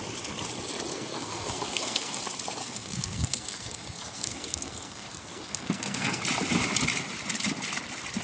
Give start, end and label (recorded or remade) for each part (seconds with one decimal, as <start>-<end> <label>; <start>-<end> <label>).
0.0-0.9 recorded; 0.9-2.2 remade; 2.2-2.6 recorded; 2.6-6.2 remade; 6.2-8.2 recorded